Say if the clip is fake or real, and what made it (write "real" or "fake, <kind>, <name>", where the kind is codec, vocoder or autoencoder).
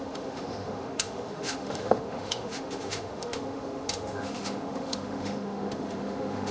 fake, autoencoder, DAC-VAE